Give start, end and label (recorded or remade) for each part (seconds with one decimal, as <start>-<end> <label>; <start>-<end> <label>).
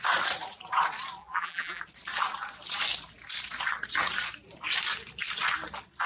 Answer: 0.0-1.2 recorded; 1.2-1.8 remade; 1.8-6.1 recorded